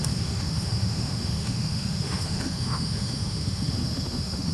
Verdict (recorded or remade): remade